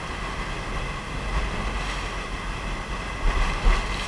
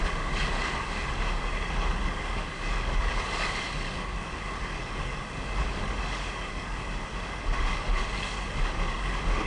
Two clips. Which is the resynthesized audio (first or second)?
second